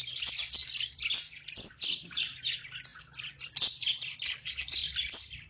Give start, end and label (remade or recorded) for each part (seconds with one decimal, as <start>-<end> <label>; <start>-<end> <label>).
0.0-0.6 recorded; 0.6-2.2 remade; 2.2-4.8 recorded; 4.8-5.5 remade